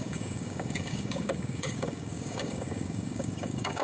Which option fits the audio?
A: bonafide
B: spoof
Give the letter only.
B